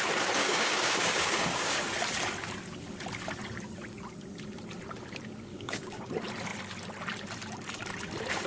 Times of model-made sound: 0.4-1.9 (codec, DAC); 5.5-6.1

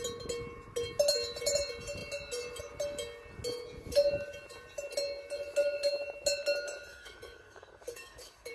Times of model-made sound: 6.9-8.5 (codec, DAC)

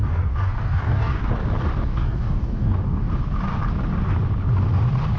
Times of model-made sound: 0.0-1.2 (codec, DAC); 1.9-3.1

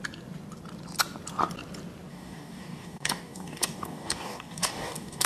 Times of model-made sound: 2.1-5.3 (codec, DAC)

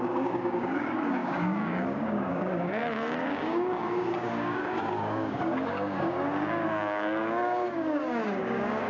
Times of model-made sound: 0.0-8.9 (codec, DAC)

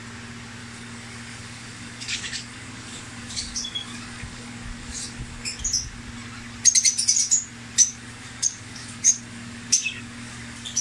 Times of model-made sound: 0.6-5.6 (codec, DAC); 7.8-10.8

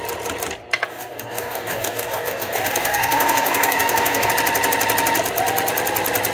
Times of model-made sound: 0.9-4.3 (codec, DAC)